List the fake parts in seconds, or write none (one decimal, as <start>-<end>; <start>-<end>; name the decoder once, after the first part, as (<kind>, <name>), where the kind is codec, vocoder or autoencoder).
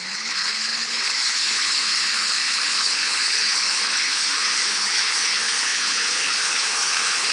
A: 0.0-7.3 (codec, HILCodec)